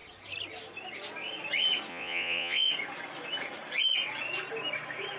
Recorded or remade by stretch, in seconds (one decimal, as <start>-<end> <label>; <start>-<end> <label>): 0.0-1.9 recorded; 1.9-2.7 remade; 2.7-5.2 recorded